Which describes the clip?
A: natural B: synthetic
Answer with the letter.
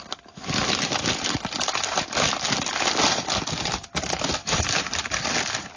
A